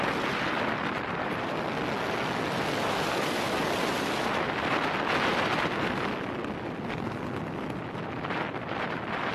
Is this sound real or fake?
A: real